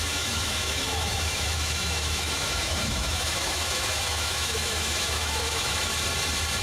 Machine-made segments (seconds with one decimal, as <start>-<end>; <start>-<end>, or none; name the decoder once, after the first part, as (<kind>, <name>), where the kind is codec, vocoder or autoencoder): 0.0-5.9 (autoencoder, DAC-VAE)